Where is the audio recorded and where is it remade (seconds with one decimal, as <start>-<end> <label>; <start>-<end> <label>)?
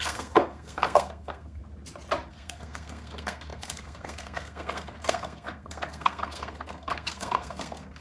0.0-1.6 remade; 1.6-2.3 recorded; 2.3-8.0 remade